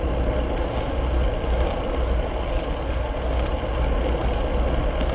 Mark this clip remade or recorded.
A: recorded